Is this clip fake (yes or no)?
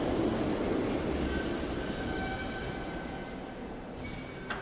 no